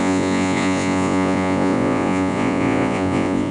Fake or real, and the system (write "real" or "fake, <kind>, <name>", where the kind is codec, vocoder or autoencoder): fake, vocoder, Vocos